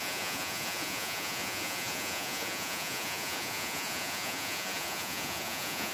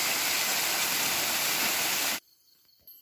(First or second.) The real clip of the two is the second